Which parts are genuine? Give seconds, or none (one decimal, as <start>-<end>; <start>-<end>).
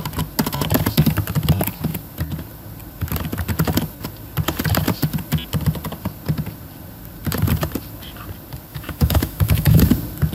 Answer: 0.0-8.7; 9.8-10.3